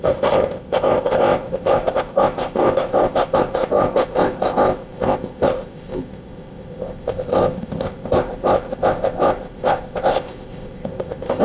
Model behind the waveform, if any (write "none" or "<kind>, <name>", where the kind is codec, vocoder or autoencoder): codec, ZipCodec